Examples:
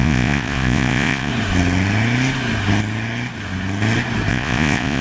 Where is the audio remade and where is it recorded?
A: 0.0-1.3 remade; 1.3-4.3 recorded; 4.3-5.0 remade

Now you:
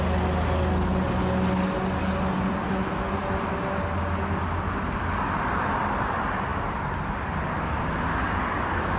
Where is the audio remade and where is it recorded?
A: 0.0-9.0 recorded

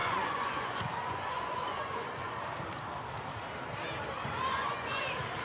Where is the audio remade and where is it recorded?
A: 0.0-2.5 remade; 2.5-4.2 recorded; 4.2-5.0 remade; 5.0-5.4 recorded

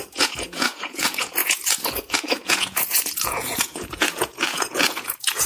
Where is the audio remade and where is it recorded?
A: 0.0-5.5 remade

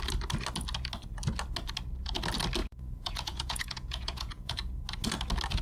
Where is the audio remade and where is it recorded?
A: 0.0-2.6 recorded; 2.6-4.8 remade; 4.8-5.6 recorded

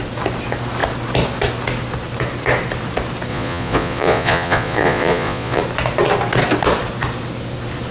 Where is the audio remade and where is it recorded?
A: 0.0-3.3 recorded; 3.3-5.6 remade; 5.6-7.9 recorded

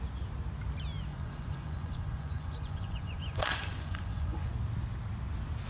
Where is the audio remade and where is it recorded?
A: 0.0-1.1 recorded; 1.1-4.5 remade; 4.5-5.7 recorded